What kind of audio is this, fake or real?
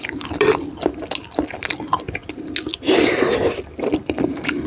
real